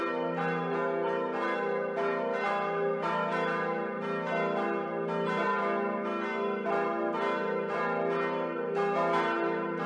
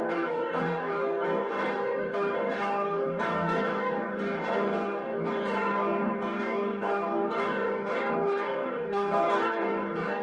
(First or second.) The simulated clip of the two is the second